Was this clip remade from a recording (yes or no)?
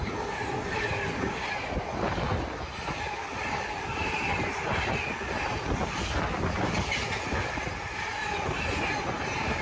no